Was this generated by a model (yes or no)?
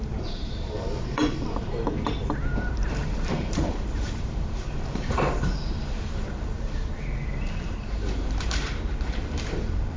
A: yes